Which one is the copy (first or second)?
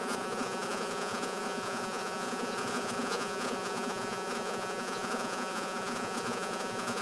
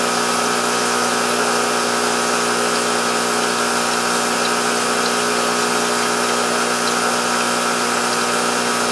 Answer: first